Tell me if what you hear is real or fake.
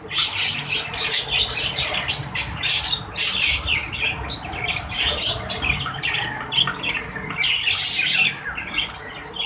real